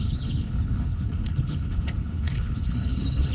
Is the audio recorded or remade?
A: remade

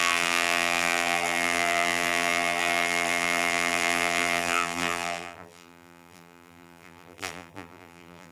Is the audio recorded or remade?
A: remade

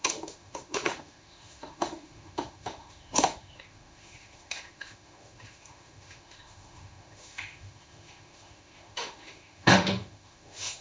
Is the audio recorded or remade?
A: remade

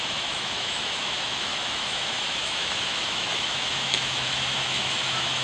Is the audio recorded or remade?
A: remade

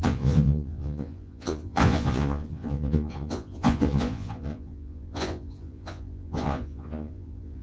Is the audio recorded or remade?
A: remade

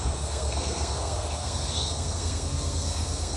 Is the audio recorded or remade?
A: remade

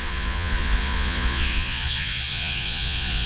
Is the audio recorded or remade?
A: remade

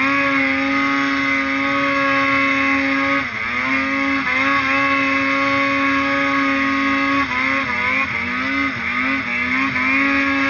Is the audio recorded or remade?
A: recorded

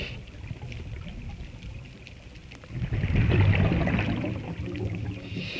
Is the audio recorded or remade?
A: recorded